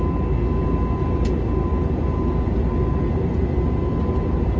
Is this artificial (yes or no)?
no